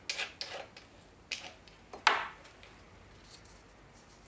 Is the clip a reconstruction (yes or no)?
no